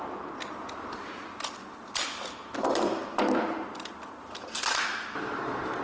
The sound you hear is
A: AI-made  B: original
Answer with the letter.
B